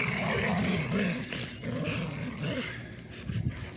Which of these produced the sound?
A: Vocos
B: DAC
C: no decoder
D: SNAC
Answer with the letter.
C